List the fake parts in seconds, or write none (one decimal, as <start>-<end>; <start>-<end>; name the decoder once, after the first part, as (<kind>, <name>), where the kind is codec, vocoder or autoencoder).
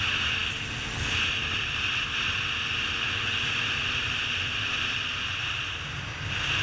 none